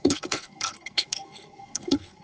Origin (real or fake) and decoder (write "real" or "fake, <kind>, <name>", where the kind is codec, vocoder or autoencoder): fake, codec, SNAC